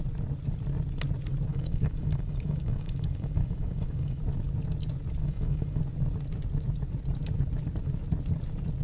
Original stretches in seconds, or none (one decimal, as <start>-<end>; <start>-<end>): 0.0-1.5; 4.2-5.2; 5.8-8.8